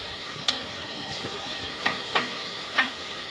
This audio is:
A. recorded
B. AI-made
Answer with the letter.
B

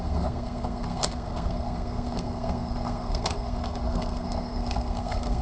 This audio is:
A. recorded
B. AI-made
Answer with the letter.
B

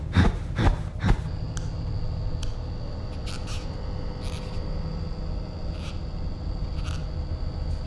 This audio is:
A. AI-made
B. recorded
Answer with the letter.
B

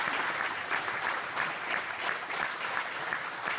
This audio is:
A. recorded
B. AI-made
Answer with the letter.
A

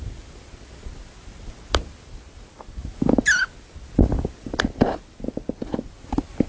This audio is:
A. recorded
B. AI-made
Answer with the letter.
A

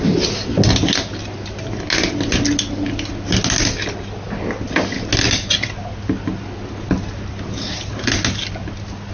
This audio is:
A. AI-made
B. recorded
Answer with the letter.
B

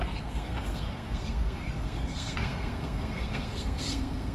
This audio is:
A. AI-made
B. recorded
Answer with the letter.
A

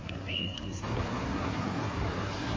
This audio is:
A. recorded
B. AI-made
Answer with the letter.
B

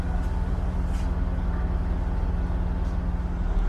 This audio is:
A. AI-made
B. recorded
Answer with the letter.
B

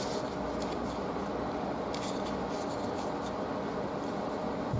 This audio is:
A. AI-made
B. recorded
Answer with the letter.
B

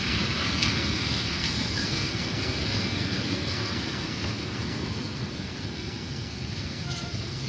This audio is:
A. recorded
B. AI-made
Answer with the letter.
B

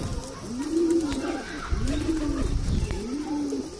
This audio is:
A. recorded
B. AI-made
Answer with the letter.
A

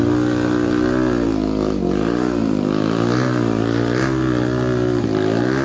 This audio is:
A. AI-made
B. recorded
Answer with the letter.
B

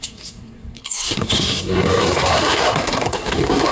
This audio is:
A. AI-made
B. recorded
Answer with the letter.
A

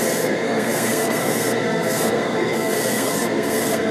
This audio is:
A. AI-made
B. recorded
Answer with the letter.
A